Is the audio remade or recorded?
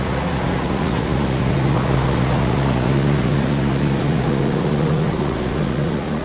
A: remade